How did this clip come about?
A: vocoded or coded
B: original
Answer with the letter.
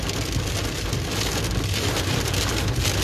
B